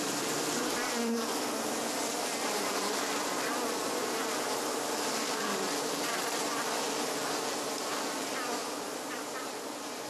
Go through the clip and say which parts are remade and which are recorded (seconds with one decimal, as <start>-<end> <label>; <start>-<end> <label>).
0.0-8.6 recorded; 8.6-10.1 remade